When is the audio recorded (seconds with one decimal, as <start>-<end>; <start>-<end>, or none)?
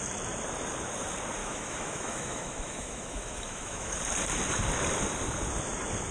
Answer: 0.0-1.4; 4.0-6.1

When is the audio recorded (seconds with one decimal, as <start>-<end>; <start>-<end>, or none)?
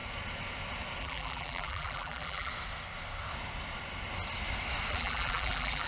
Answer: 0.0-1.0; 2.5-4.9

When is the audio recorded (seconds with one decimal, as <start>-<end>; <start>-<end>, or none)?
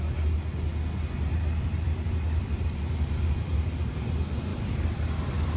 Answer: 0.0-1.3; 3.6-4.5